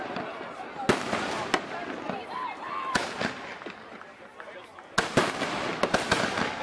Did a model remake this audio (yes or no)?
no